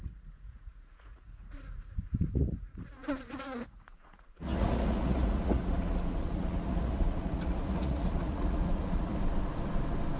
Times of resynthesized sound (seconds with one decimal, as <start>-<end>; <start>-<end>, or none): 0.0-9.1